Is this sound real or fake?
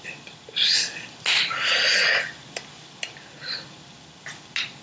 real